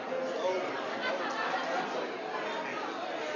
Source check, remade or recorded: recorded